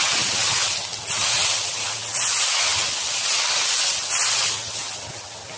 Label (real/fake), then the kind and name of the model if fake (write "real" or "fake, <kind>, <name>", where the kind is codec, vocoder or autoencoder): real